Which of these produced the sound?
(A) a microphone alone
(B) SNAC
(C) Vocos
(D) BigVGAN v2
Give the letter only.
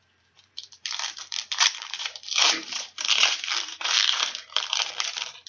D